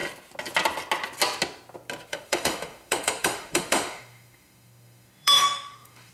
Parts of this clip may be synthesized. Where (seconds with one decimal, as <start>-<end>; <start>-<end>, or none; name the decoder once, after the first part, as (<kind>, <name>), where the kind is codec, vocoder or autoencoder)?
2.1-6.1 (autoencoder, DAC-VAE)

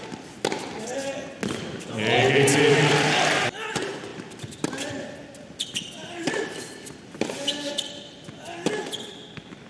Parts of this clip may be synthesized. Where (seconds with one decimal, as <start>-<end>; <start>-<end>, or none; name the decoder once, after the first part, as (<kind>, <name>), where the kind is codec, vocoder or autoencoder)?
2.5-3.4 (vocoder, BigVGAN v2); 6.0-6.7

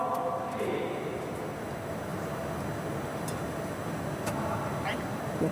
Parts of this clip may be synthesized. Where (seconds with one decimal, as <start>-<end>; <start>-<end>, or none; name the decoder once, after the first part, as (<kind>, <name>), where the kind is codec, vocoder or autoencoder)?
none

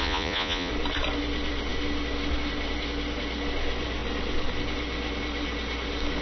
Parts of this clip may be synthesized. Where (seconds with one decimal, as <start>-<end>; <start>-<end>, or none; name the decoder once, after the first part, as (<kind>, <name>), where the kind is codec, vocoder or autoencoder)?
0.0-0.7 (vocoder, Vocos)

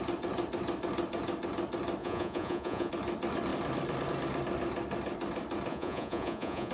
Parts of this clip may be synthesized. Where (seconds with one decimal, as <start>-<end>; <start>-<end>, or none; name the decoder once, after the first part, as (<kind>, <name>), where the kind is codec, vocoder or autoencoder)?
2.0-2.9 (vocoder, Vocos); 5.7-6.7

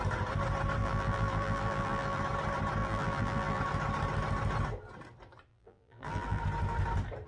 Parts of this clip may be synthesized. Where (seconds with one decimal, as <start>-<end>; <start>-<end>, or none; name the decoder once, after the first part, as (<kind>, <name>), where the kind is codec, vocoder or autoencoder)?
0.8-2.2 (vocoder, BigVGAN v2); 2.8-3.6; 5.5-6.4

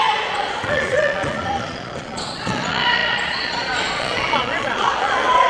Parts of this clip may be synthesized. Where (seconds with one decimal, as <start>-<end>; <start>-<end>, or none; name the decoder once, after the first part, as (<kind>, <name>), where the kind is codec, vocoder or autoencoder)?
0.0-5.5 (vocoder, Vocos)

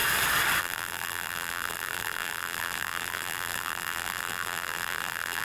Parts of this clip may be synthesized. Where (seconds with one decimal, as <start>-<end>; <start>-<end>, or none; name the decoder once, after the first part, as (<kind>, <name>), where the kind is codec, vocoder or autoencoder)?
0.6-5.4 (vocoder, BigVGAN v2)